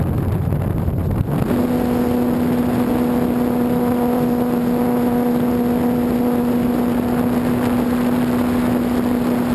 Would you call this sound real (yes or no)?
yes